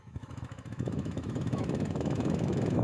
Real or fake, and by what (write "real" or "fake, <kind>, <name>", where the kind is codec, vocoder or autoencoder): fake, autoencoder, DAC-VAE